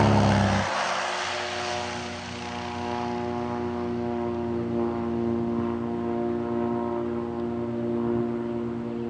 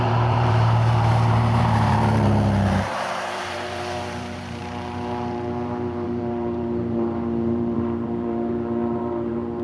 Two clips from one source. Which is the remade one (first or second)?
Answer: second